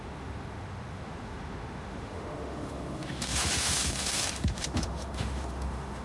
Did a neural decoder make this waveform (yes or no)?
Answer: yes